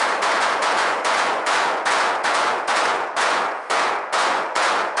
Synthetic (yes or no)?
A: yes